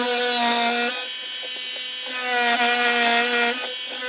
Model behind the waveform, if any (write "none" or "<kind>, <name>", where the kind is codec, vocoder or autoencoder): none